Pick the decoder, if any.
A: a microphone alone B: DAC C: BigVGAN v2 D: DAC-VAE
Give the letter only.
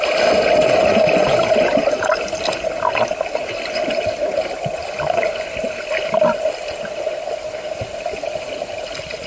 A